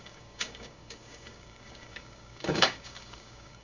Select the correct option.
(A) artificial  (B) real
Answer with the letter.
A